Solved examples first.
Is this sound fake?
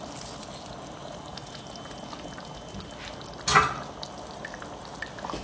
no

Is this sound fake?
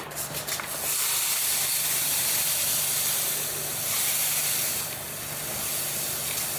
no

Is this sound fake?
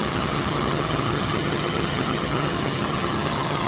yes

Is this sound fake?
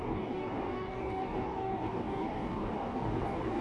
yes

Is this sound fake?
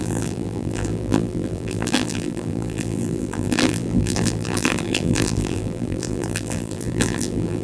yes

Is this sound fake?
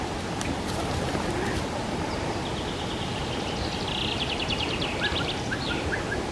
yes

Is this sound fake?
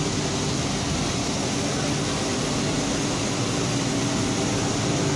no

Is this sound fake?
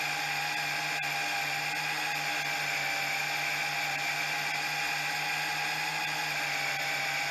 no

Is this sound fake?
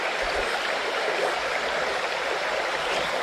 no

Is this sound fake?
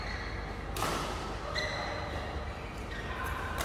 no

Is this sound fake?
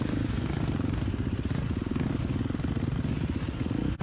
no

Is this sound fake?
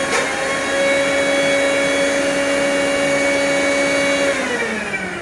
no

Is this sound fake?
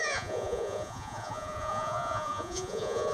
yes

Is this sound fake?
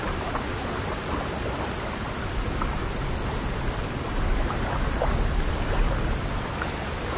no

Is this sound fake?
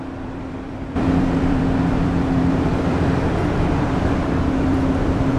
yes